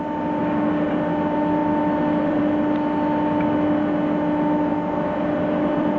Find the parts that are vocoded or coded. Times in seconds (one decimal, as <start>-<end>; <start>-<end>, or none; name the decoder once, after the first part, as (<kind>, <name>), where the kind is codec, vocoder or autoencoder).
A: 0.4-0.9 (vocoder, BigVGAN v2); 1.6-2.4; 4.7-6.0